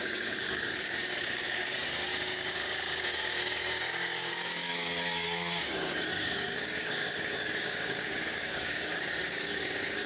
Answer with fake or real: fake